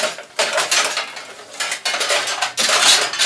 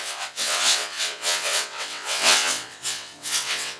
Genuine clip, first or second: first